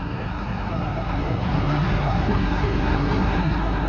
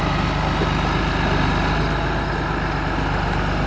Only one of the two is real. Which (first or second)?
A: second